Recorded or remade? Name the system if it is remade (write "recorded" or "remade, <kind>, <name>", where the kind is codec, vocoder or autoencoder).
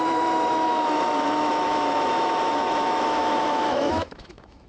remade, autoencoder, DAC-VAE